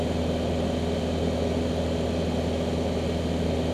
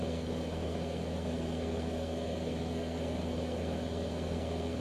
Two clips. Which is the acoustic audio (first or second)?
first